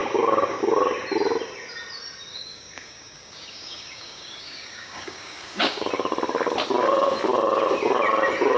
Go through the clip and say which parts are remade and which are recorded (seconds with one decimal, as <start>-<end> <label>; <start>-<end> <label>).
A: 0.0-0.8 remade; 0.8-2.3 recorded; 2.3-5.9 remade; 5.9-8.6 recorded